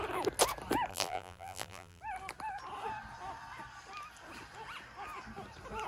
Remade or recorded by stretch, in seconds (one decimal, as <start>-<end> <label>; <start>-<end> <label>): 0.0-0.9 recorded; 0.9-2.0 remade; 2.0-5.9 recorded